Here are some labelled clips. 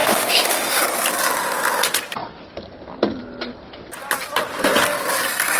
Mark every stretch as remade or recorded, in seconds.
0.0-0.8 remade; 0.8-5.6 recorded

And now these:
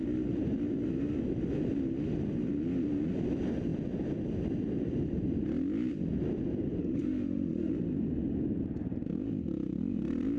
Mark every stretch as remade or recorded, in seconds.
0.0-6.8 recorded; 6.8-7.7 remade; 7.7-10.4 recorded

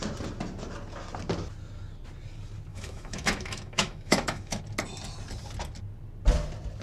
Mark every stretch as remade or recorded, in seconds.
0.0-2.7 recorded; 2.7-4.6 remade; 4.6-6.8 recorded

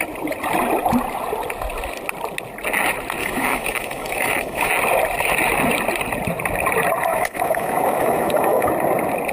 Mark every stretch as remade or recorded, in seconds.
0.0-3.2 recorded; 3.2-4.7 remade; 4.7-7.1 recorded; 7.1-8.7 remade; 8.7-9.3 recorded

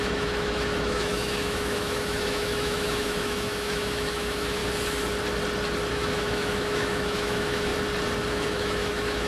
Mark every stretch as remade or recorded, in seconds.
0.0-4.6 remade; 4.6-5.9 recorded; 5.9-7.7 remade; 7.7-8.3 recorded; 8.3-9.3 remade

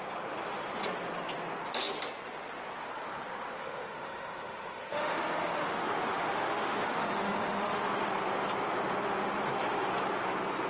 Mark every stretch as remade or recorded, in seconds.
0.0-3.6 recorded; 3.6-7.8 remade; 7.8-10.7 recorded

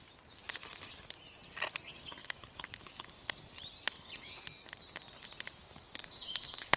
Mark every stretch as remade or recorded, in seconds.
0.0-2.2 recorded; 2.2-3.1 remade; 3.1-5.6 recorded; 5.6-6.8 remade